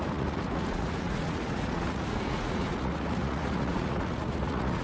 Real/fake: fake